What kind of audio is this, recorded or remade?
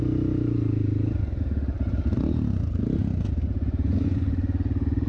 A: recorded